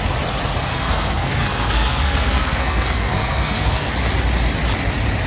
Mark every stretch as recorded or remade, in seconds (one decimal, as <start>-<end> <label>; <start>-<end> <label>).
0.0-0.7 recorded; 0.7-3.9 remade; 3.9-5.3 recorded